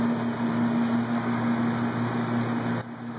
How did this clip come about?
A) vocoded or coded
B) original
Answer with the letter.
B